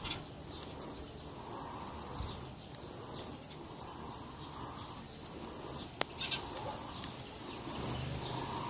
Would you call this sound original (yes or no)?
yes